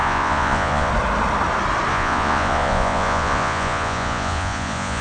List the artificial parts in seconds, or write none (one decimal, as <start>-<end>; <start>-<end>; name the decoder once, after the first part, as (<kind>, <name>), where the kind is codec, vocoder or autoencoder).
0.0-0.9 (vocoder, Vocos); 1.9-5.0